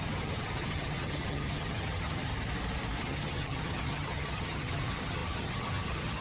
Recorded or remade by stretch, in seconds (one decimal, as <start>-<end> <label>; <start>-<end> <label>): 0.0-2.3 remade; 2.3-3.0 recorded; 3.0-6.2 remade